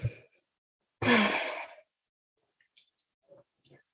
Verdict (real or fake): real